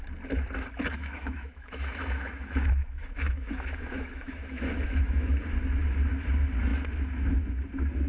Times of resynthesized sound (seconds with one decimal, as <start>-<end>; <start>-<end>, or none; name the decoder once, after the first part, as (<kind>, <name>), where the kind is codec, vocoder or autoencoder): 1.0-5.3 (autoencoder, DAC-VAE)